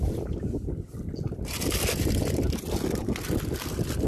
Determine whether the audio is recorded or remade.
recorded